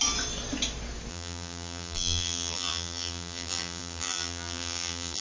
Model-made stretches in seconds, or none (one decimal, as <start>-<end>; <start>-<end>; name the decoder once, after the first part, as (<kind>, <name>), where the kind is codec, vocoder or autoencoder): 1.1-5.2 (vocoder, BigVGAN v2)